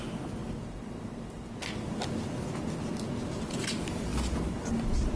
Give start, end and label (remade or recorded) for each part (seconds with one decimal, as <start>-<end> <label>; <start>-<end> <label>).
0.0-5.2 recorded

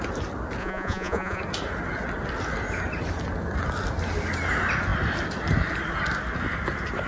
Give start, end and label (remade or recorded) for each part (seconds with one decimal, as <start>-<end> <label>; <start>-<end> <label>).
0.0-0.6 recorded; 0.6-1.4 remade; 1.4-7.1 recorded

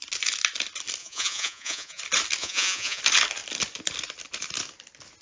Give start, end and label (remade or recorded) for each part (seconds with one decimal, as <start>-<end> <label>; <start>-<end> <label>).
0.0-1.0 recorded; 1.0-2.0 remade; 2.0-2.4 recorded; 2.4-3.0 remade; 3.0-5.2 recorded

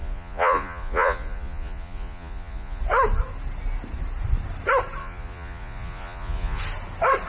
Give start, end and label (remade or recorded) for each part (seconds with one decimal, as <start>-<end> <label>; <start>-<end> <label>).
0.0-2.8 remade; 2.8-5.0 recorded; 5.0-6.6 remade; 6.6-7.3 recorded

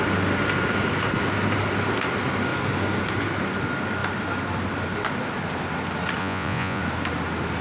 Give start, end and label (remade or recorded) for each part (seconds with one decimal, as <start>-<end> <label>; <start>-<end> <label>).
0.0-6.2 recorded; 6.2-6.8 remade; 6.8-7.6 recorded

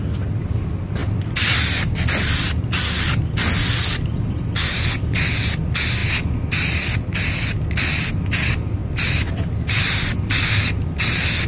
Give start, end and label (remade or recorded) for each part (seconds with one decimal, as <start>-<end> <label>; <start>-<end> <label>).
0.0-11.5 recorded